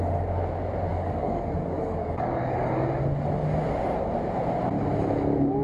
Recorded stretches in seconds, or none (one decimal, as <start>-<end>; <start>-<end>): 0.0-0.9; 2.7-5.6